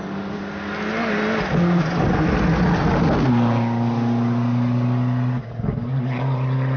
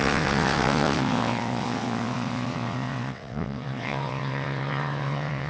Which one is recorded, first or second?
first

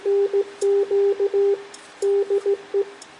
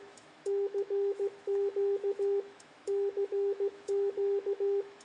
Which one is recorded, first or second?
first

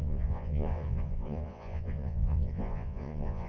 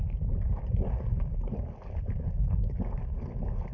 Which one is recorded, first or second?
second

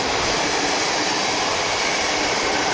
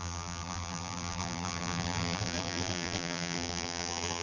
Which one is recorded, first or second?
first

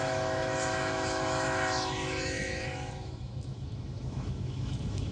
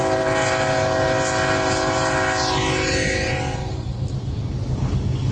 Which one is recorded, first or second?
second